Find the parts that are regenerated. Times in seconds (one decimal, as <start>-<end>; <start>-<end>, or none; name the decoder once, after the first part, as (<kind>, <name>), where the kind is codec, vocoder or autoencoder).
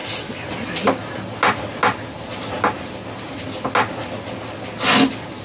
none